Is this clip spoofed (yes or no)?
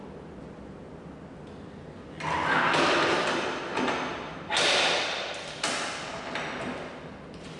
no